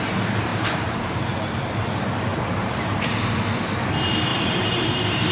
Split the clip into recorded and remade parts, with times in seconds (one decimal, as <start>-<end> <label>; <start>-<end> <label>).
0.0-0.5 recorded; 0.5-1.2 remade; 1.2-2.3 recorded; 2.3-3.3 remade; 3.3-4.3 recorded; 4.3-5.3 remade